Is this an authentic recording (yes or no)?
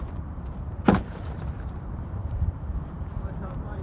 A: no